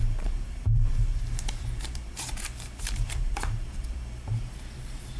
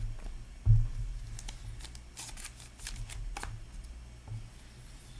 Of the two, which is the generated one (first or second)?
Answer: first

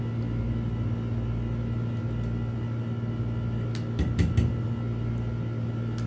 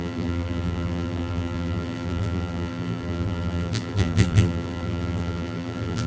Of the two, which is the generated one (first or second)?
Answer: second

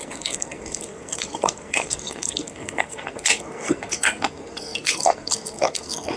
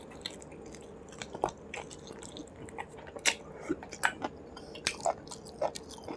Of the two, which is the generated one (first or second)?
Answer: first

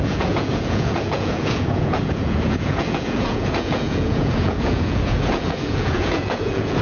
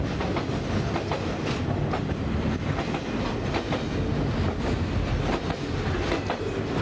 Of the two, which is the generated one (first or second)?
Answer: first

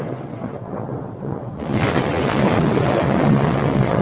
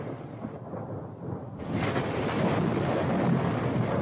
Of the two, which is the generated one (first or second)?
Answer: first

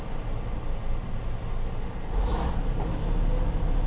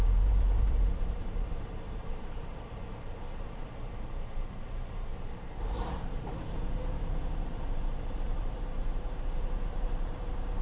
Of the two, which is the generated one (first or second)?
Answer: second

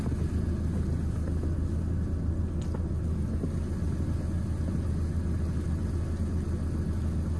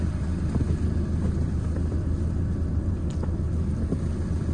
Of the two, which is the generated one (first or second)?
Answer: second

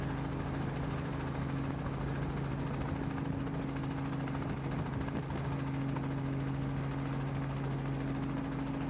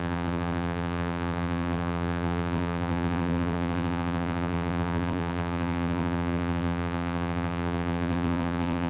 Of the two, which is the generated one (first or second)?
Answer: second